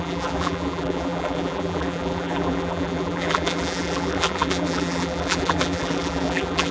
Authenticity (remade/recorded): remade